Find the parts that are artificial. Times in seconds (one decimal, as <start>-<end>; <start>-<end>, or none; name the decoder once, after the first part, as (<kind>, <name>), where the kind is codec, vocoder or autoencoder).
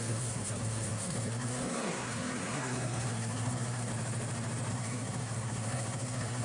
0.0-3.9 (codec, SNAC); 4.7-6.4